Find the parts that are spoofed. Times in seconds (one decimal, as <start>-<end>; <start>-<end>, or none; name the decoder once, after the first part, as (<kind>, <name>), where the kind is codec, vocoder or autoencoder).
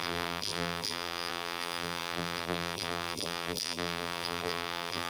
0.0-5.1 (vocoder, BigVGAN v2)